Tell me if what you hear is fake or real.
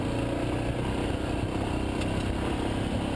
real